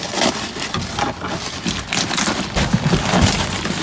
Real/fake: real